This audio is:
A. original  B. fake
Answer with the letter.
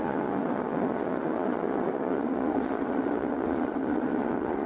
B